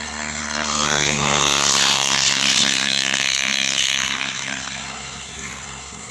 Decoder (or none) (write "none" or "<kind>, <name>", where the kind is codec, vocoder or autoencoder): codec, SNAC